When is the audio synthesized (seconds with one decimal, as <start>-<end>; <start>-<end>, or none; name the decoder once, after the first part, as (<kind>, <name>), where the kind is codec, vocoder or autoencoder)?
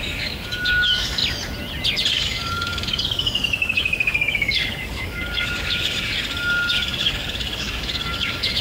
0.0-1.2 (codec, DAC); 2.1-8.6